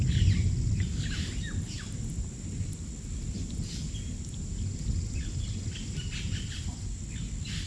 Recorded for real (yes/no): yes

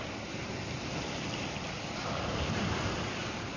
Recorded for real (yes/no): yes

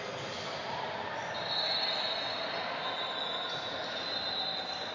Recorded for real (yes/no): yes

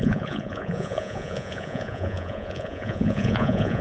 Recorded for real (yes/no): no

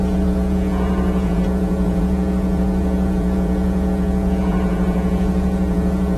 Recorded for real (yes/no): no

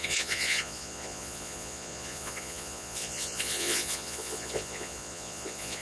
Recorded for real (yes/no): no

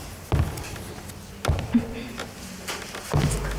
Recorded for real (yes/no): yes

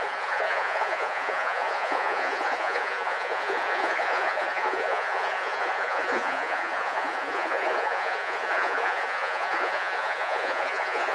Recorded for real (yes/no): no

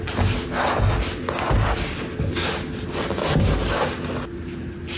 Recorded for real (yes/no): yes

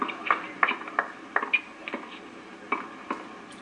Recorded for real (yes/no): yes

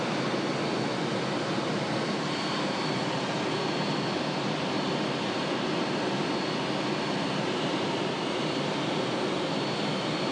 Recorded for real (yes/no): yes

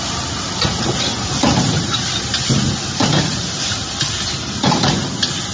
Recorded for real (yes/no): yes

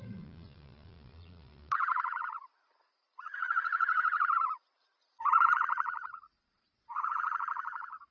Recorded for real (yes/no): no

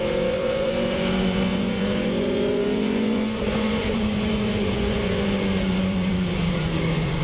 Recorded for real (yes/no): no